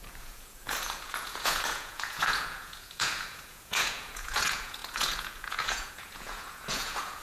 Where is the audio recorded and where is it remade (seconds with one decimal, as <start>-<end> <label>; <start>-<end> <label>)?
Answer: 0.0-7.2 remade